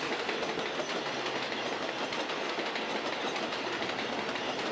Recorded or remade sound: recorded